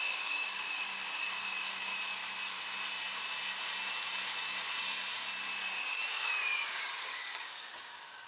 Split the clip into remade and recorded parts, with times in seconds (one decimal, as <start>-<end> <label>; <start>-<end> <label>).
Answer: 0.0-1.9 remade; 1.9-6.1 recorded; 6.1-8.3 remade